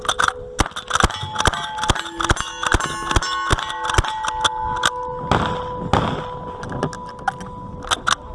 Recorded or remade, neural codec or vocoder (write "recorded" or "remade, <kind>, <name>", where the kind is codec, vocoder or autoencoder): recorded